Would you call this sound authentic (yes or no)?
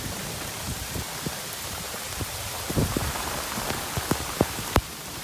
no